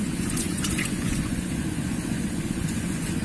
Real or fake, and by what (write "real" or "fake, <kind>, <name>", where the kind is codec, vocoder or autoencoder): fake, vocoder, Vocos